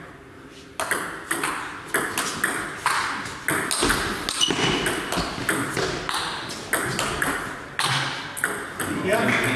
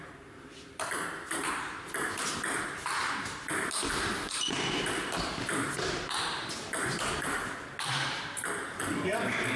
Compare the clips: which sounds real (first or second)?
first